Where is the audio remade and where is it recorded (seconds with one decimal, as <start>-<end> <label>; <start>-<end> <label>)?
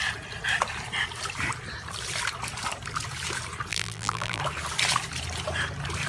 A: 0.0-3.7 recorded; 3.7-4.4 remade; 4.4-6.1 recorded